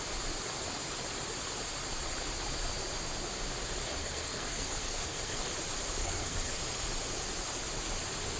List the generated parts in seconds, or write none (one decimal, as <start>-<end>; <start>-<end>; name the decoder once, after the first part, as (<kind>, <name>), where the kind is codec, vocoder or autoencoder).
4.0-5.5 (codec, SNAC); 6.0-6.6